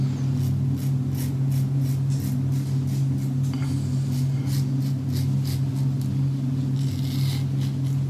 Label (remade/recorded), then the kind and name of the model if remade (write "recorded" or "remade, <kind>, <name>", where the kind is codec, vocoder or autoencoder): recorded